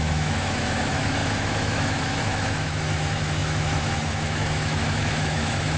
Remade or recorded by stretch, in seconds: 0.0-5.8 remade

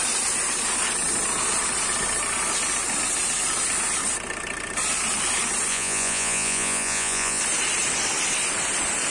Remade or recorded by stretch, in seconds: 0.0-5.7 recorded; 5.7-7.4 remade; 7.4-9.1 recorded

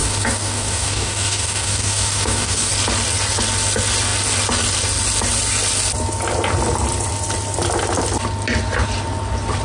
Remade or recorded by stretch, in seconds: 0.0-2.7 remade; 2.7-9.6 recorded

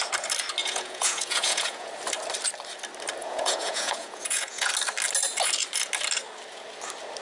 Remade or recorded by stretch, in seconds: 0.0-0.6 recorded; 0.6-1.9 remade; 1.9-3.2 recorded; 3.2-4.7 remade; 4.7-7.2 recorded

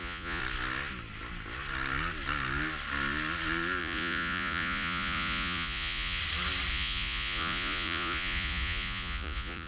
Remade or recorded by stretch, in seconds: 0.0-0.4 remade; 0.4-3.8 recorded; 3.8-6.2 remade; 6.2-6.7 recorded; 6.7-9.7 remade